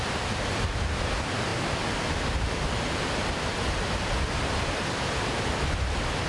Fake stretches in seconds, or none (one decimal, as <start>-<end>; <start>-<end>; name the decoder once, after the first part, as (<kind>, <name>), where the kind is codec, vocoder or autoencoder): none